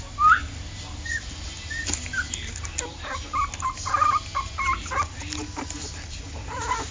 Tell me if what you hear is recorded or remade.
recorded